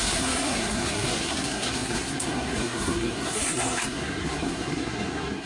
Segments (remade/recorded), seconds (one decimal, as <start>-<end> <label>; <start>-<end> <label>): 0.0-5.5 remade